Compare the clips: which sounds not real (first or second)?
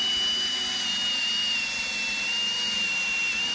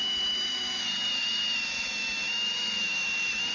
second